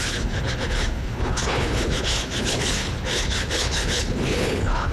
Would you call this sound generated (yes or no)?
yes